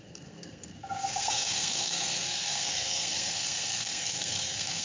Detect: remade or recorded remade